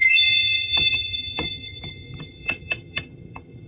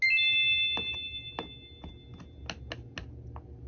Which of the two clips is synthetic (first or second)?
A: first